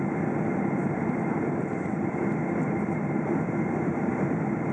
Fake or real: fake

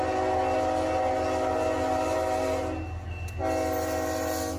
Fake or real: real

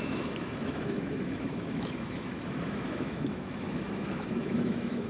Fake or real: fake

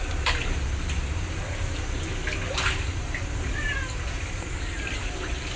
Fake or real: real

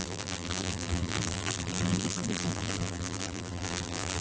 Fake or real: fake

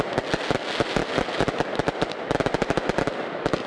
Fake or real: real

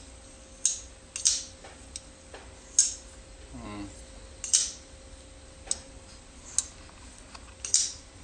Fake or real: real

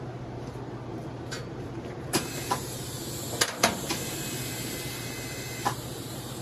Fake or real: fake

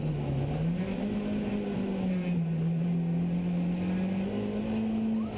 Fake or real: real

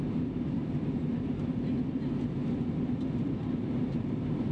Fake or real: real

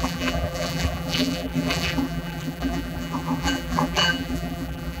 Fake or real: fake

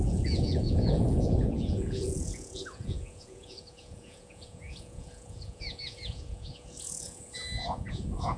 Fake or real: fake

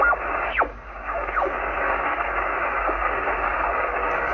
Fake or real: fake